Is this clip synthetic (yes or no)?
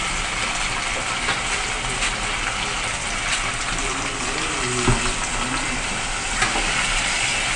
no